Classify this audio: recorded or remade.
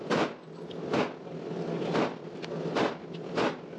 recorded